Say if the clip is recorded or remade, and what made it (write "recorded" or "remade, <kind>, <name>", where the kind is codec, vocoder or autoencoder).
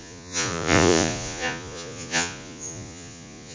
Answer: remade, vocoder, Vocos